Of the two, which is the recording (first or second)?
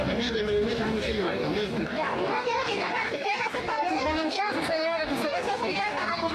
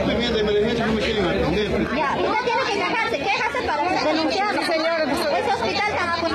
second